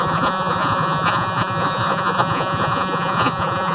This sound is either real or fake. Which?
fake